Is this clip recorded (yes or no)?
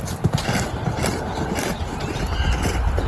yes